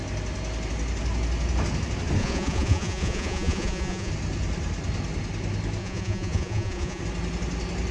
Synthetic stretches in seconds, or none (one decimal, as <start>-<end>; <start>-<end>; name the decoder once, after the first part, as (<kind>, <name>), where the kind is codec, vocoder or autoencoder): 2.2-4.1 (vocoder, Vocos); 5.8-7.0